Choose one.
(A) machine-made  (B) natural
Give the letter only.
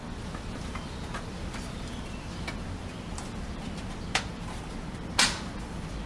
A